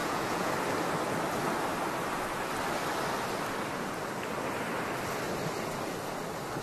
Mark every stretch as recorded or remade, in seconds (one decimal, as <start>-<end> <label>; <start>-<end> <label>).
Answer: 0.0-0.5 remade; 0.5-6.6 recorded